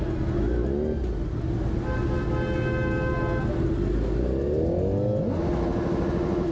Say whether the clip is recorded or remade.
recorded